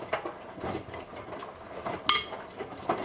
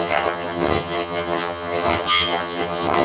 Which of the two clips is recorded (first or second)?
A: first